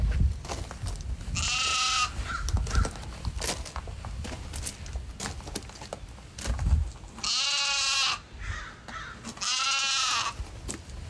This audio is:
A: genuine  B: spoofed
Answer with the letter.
A